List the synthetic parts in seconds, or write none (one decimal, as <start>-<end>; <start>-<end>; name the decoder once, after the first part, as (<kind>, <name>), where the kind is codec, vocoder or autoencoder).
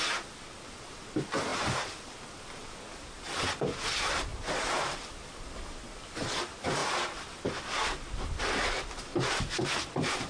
4.3-5.3 (vocoder, BigVGAN v2); 9.1-10.3